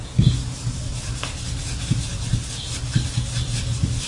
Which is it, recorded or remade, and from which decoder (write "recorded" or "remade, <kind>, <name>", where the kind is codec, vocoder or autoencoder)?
recorded